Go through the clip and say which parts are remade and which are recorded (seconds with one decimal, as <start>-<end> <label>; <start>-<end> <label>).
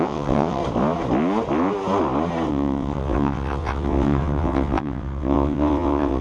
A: 0.0-0.6 remade; 0.6-2.5 recorded; 2.5-6.2 remade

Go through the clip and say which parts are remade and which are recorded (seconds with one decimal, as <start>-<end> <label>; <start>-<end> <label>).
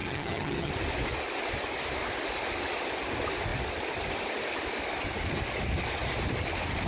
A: 0.0-0.7 remade; 0.7-6.9 recorded